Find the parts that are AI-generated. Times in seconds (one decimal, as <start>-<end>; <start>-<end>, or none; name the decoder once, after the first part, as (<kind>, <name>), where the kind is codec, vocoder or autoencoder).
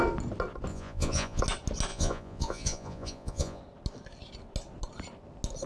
0.7-1.4 (vocoder, Vocos); 1.9-3.6